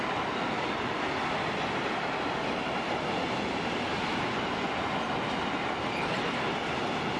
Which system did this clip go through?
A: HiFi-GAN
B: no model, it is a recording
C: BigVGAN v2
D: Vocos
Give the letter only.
B